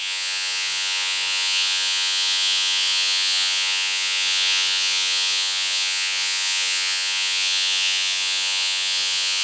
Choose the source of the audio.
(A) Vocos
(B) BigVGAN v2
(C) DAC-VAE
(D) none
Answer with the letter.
A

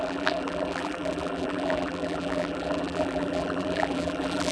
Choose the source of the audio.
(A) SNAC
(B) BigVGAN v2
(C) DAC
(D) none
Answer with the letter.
B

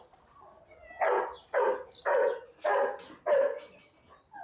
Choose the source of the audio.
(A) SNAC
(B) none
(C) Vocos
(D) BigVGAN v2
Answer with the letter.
B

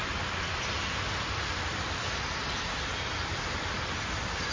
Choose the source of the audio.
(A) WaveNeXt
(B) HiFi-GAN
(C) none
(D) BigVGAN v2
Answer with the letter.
C